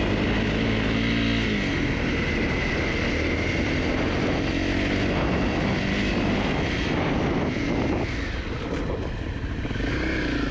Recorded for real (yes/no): yes